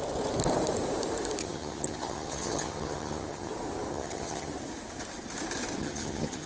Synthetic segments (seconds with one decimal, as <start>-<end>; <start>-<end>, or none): 1.4-3.5; 3.9-4.5; 5.8-6.5